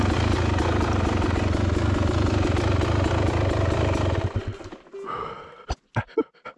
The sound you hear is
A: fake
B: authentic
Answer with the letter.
B